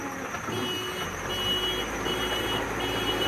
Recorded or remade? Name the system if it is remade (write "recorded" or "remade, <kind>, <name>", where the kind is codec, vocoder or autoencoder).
recorded